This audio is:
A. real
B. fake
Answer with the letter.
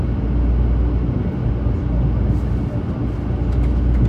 A